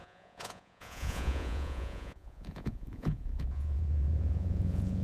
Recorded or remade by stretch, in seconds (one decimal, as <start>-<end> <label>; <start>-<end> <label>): 0.0-5.0 remade